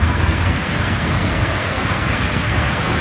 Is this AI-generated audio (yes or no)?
yes